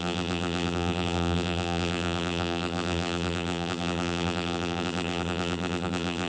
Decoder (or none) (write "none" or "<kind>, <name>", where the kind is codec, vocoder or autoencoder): vocoder, BigVGAN v2